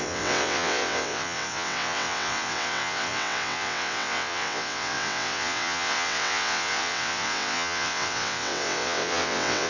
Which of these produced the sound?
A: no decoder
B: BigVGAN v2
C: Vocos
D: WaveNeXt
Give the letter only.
D